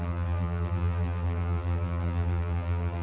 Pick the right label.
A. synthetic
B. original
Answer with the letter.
A